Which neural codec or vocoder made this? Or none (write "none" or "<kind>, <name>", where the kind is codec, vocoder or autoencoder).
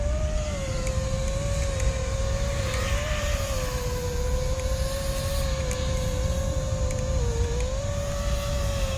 none